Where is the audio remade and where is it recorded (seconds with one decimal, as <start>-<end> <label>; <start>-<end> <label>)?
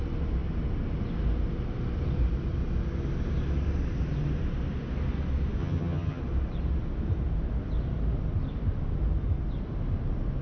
0.0-5.6 recorded; 5.6-6.2 remade; 6.2-10.4 recorded